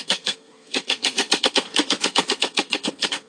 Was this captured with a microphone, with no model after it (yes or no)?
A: no